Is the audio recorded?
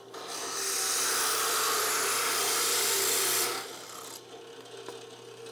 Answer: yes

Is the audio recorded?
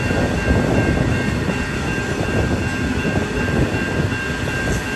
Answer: yes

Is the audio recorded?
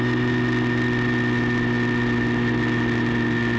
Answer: yes